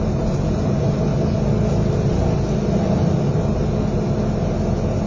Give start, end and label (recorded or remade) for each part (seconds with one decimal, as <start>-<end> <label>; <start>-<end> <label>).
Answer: 0.0-5.1 recorded